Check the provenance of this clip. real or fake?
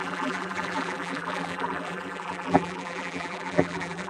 fake